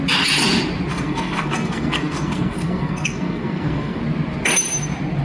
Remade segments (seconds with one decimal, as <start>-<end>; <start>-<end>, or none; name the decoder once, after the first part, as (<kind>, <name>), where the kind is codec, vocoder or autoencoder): 0.9-4.0 (codec, SNAC)